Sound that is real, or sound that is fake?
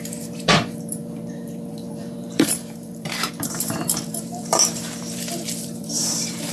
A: fake